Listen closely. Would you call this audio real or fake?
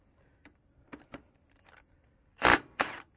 fake